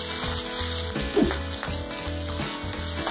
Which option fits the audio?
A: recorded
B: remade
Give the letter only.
A